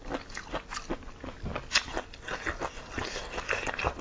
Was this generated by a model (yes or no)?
no